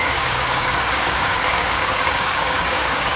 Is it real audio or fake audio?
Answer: fake